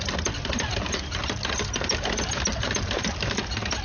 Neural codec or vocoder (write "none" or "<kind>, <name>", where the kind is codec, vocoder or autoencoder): none